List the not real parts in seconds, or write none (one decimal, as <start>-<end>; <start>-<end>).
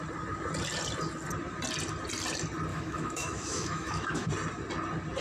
2.7-4.3